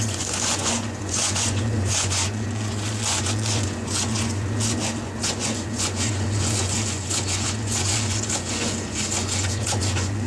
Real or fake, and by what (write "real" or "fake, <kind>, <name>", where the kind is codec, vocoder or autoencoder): fake, vocoder, Vocos